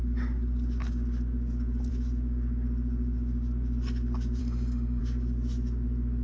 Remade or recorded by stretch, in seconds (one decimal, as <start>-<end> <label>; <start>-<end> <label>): 0.0-4.4 recorded; 4.4-5.0 remade; 5.0-6.2 recorded